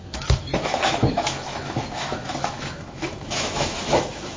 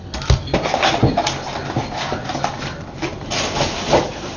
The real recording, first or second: second